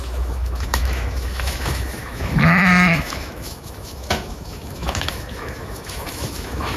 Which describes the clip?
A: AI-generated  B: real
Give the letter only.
A